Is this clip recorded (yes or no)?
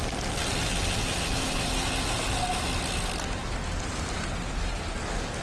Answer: yes